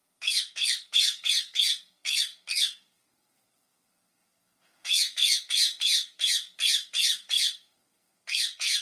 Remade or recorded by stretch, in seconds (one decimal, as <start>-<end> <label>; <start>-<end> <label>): 0.0-8.8 remade